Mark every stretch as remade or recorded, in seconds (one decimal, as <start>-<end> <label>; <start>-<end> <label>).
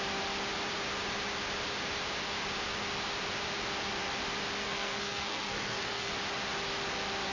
0.0-4.6 recorded; 4.6-6.1 remade; 6.1-7.3 recorded